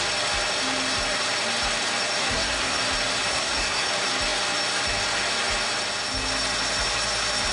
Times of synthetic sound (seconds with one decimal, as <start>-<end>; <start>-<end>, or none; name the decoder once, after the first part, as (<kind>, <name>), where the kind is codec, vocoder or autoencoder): 2.2-2.8 (codec, SNAC); 3.3-3.9